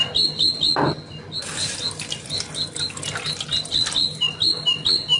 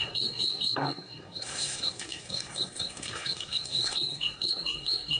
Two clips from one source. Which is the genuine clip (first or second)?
first